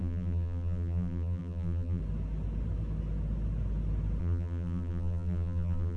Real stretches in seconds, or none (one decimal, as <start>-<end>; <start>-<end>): 2.0-4.2